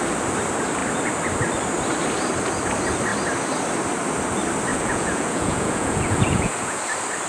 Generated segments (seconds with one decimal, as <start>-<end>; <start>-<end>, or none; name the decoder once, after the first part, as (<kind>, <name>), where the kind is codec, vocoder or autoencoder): 4.7-6.8 (vocoder, Vocos)